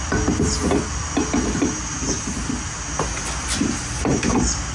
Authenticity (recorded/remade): recorded